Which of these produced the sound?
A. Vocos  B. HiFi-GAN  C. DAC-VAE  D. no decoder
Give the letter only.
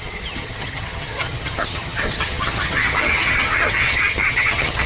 B